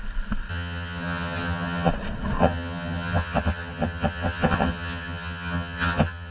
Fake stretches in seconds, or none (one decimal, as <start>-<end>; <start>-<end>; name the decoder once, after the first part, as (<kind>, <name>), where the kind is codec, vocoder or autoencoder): 0.5-1.9 (vocoder, HiFi-GAN); 2.4-6.3